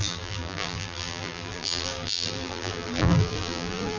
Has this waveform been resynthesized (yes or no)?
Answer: yes